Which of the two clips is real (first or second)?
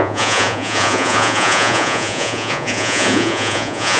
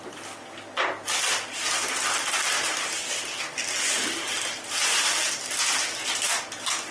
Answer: second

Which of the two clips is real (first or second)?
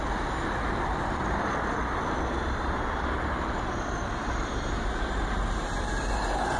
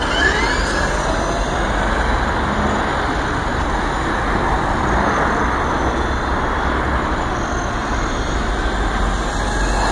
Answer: second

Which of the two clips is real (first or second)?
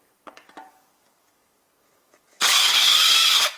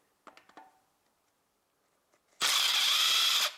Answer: second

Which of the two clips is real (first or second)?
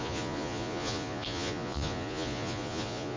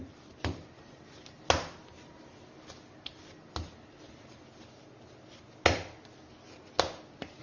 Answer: second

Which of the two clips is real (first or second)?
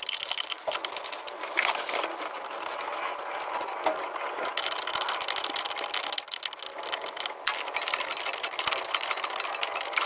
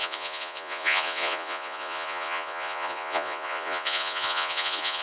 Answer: first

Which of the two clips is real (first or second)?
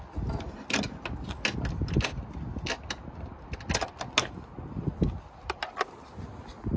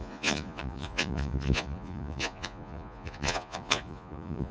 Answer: first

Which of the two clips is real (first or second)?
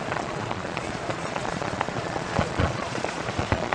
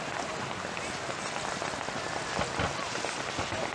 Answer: second